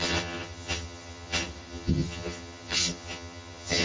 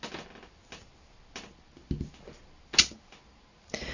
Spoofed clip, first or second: first